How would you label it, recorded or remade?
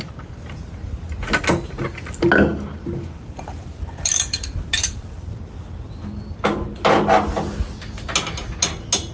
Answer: recorded